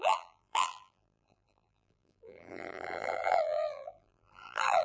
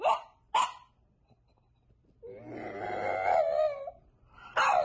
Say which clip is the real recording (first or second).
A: second